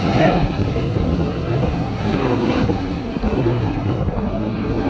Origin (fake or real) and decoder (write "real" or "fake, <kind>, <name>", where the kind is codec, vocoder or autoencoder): fake, codec, SNAC